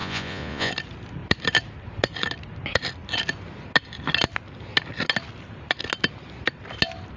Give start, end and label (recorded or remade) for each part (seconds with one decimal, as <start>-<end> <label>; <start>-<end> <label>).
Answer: 0.0-0.7 remade; 0.7-7.2 recorded